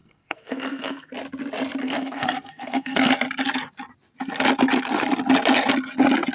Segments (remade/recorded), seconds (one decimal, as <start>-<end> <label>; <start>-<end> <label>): 0.0-1.1 remade; 1.1-1.8 recorded; 1.8-3.1 remade; 3.1-6.3 recorded